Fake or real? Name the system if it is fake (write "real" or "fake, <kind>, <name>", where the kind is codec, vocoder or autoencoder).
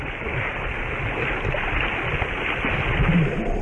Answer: real